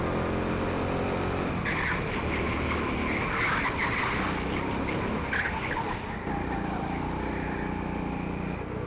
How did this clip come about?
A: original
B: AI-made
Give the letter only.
A